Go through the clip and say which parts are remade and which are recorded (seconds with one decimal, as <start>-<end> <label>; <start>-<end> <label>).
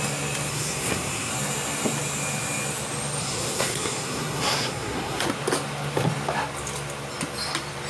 0.0-0.5 recorded; 0.5-1.3 remade; 1.3-3.2 recorded; 3.2-5.2 remade; 5.2-7.9 recorded